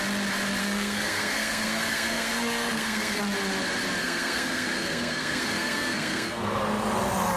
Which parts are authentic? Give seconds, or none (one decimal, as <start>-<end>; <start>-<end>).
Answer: 0.0-0.6; 3.2-4.0; 6.6-7.4